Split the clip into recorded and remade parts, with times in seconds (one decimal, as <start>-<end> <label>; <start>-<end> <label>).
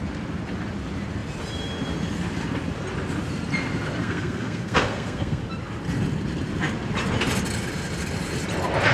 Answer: 0.0-4.0 recorded; 4.0-5.4 remade; 5.4-8.9 recorded